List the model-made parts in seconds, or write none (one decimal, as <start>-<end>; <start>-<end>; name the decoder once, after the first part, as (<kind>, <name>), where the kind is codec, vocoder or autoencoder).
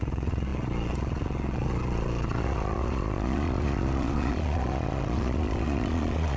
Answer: 0.0-6.4 (vocoder, Vocos)